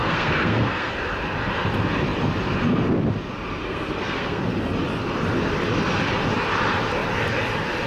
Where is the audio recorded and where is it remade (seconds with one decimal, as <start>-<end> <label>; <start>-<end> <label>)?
0.0-0.9 remade; 0.9-3.6 recorded; 3.6-4.4 remade; 4.4-7.9 recorded